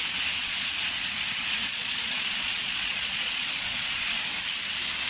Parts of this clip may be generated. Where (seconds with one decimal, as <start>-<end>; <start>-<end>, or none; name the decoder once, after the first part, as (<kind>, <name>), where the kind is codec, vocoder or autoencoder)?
0.4-1.1 (vocoder, Vocos); 1.6-4.1